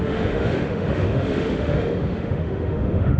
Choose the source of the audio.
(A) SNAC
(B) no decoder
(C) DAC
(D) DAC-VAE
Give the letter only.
D